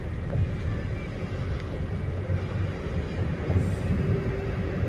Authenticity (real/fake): real